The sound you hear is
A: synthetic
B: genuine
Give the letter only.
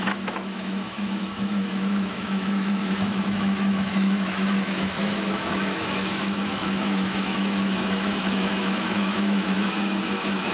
A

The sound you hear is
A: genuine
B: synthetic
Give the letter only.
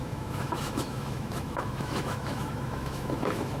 B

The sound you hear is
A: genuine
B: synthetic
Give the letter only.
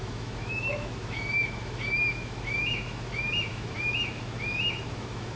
B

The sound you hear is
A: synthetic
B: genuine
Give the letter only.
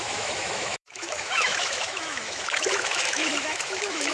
A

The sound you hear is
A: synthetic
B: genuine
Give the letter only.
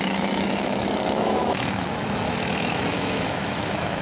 A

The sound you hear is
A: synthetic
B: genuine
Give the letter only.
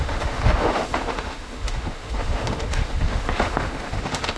A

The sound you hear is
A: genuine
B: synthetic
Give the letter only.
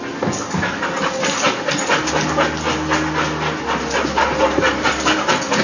A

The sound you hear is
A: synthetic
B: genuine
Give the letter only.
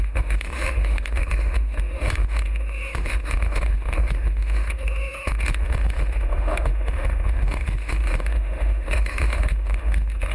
A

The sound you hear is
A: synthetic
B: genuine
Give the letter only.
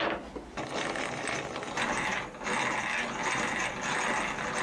B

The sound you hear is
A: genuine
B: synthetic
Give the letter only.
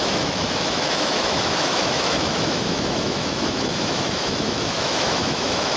B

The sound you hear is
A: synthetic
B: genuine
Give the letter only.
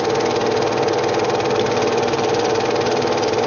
B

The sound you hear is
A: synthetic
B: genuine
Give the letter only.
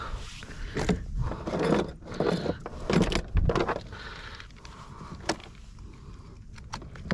B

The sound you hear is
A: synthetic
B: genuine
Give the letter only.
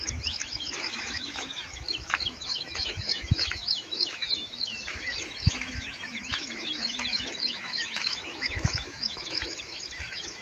A